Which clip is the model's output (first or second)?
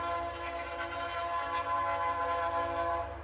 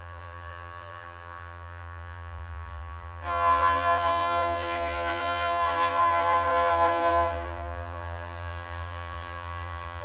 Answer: second